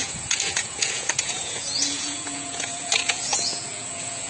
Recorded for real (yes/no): no